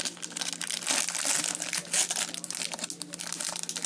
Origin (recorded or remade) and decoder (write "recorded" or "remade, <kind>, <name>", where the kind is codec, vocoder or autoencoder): recorded